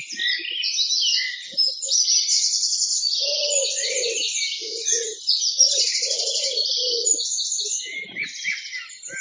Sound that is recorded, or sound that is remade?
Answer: recorded